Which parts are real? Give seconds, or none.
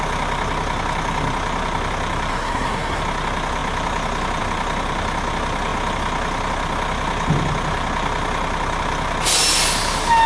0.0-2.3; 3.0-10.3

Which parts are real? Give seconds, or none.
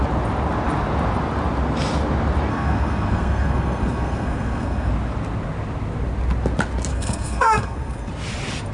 0.0-2.5; 4.9-6.9; 8.1-8.7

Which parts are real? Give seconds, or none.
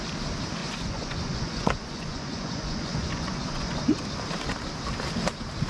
0.0-0.6; 4.0-5.7